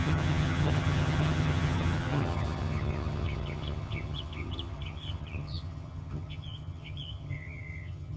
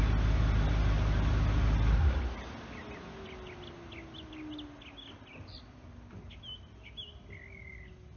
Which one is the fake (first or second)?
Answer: first